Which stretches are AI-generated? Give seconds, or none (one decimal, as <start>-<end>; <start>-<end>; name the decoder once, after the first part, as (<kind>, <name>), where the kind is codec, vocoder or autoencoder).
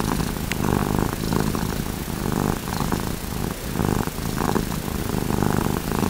0.0-3.8 (vocoder, BigVGAN v2); 5.0-6.1